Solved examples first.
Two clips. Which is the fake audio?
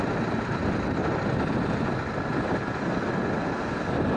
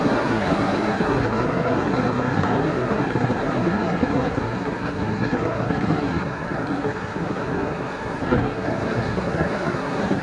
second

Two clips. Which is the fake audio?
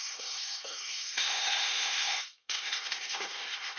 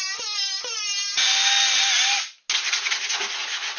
first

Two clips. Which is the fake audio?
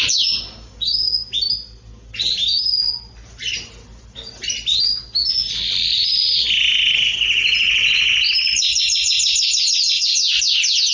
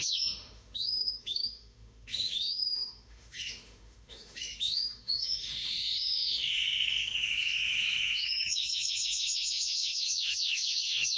second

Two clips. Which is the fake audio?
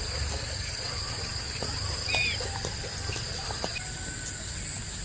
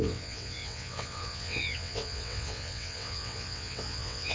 second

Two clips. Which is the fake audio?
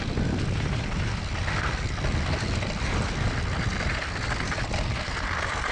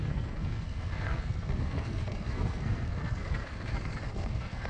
second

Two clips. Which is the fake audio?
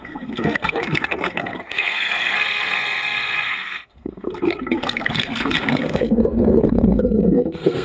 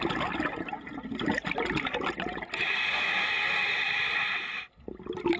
first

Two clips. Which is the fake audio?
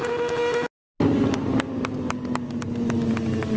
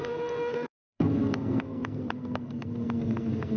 second